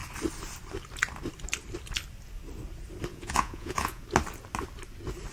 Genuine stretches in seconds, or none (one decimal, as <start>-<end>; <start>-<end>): 0.0-3.1; 4.0-5.3